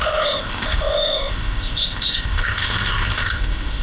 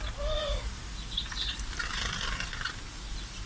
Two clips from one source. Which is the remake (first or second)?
first